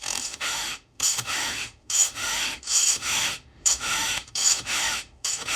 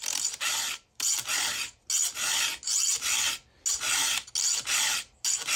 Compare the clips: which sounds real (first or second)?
second